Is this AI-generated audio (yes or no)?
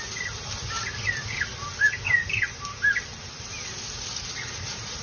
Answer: no